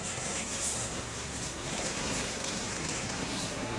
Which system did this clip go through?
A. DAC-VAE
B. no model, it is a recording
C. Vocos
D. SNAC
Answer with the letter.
D